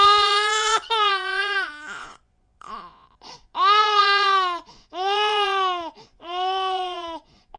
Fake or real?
fake